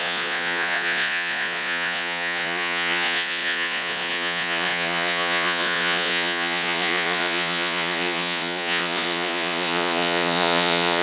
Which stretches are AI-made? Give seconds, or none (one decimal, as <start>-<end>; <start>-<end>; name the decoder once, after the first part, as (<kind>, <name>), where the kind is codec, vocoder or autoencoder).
0.0-11.0 (vocoder, Vocos)